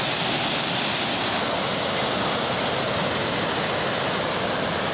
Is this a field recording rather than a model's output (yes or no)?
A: yes